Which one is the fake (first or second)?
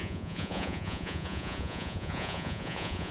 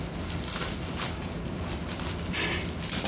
first